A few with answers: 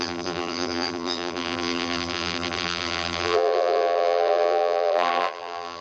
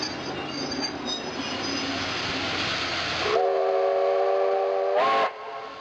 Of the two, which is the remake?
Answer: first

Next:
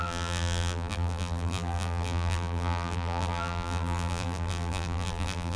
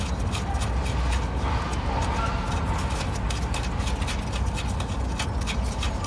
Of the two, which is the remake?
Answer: first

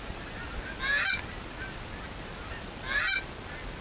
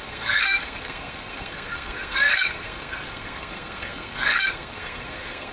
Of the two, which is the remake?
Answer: second